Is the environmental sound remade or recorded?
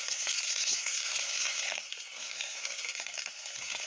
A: remade